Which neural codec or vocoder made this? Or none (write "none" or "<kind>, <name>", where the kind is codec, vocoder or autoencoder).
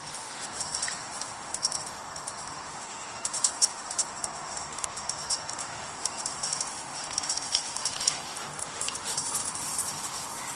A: autoencoder, DAC-VAE